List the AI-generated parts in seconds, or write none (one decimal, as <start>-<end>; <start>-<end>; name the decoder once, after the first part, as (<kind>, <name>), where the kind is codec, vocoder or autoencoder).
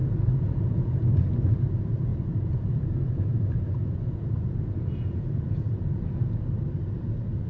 0.0-1.1 (vocoder, Vocos); 2.1-6.0